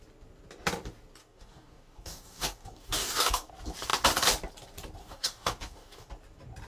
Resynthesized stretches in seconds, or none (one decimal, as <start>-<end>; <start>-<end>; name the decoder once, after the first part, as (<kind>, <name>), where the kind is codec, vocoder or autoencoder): 1.2-3.5 (codec, DAC); 5.0-6.1